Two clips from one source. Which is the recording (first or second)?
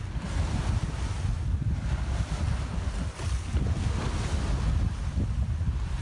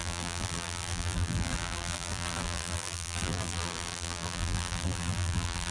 first